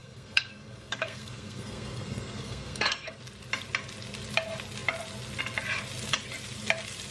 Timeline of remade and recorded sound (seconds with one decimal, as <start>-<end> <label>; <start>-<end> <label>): 0.0-3.2 remade; 3.2-7.1 recorded

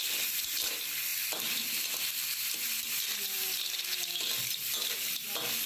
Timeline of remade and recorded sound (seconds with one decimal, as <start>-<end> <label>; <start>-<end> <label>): 0.0-5.7 recorded

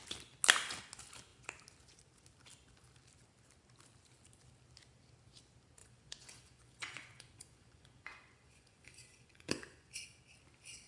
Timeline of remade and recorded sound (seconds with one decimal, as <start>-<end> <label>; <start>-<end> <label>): 0.0-5.8 recorded; 5.8-10.2 remade; 10.2-10.9 recorded

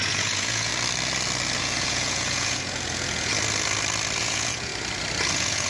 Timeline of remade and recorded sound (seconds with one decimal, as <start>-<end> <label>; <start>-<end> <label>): 0.0-0.7 remade; 0.7-1.6 recorded; 1.6-3.3 remade; 3.3-4.2 recorded; 4.2-4.7 remade; 4.7-5.3 recorded; 5.3-5.7 remade

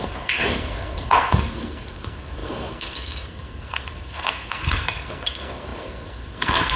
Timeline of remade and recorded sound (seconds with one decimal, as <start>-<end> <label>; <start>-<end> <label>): 0.0-6.8 remade

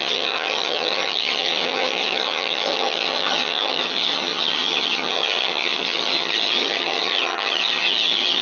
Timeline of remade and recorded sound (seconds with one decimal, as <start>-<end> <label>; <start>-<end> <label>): 0.0-8.4 remade

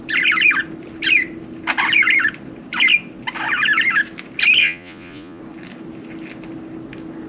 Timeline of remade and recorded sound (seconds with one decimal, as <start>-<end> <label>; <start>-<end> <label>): 0.0-4.6 recorded; 4.6-5.4 remade; 5.4-7.3 recorded